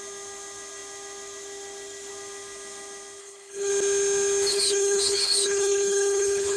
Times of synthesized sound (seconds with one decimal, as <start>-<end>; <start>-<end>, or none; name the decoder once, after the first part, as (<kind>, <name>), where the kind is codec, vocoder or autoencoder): 3.2-3.7 (codec, HILCodec); 4.5-6.6